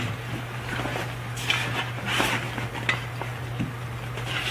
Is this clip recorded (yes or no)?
yes